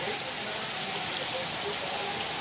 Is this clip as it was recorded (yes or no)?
yes